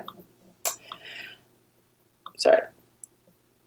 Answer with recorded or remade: recorded